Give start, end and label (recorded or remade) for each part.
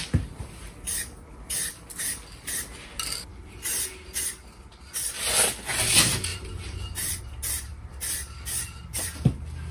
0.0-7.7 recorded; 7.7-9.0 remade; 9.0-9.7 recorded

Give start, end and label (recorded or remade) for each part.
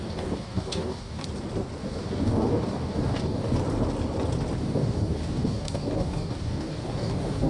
0.0-1.2 remade; 1.2-1.8 recorded; 1.8-3.6 remade; 3.6-4.6 recorded; 4.6-7.5 remade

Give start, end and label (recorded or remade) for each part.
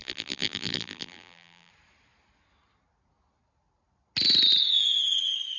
0.0-1.7 remade; 1.7-5.6 recorded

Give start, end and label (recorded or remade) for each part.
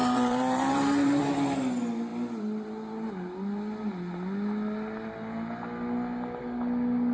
0.0-1.2 remade; 1.2-7.1 recorded